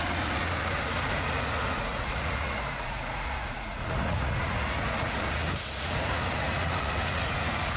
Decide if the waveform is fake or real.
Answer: fake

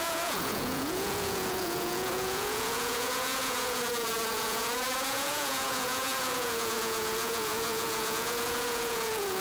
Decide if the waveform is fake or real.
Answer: fake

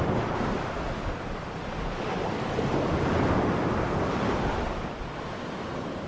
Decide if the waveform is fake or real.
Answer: fake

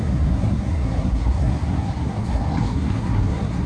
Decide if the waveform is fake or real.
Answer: fake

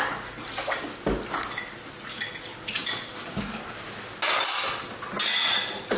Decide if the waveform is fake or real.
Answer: real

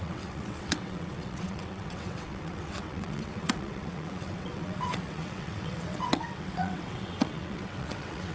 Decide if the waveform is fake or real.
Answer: fake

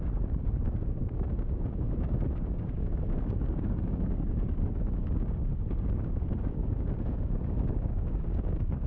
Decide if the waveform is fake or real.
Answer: fake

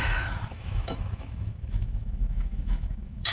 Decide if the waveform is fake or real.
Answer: fake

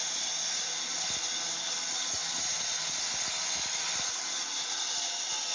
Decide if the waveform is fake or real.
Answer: real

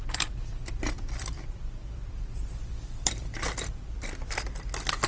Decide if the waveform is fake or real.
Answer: fake